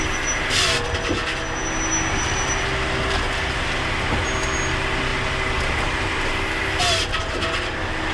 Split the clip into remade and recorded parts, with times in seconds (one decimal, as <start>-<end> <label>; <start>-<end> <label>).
0.0-8.1 recorded